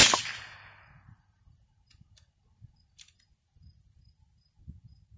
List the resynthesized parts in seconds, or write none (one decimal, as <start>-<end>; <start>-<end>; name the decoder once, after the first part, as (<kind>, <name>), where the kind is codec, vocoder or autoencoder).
none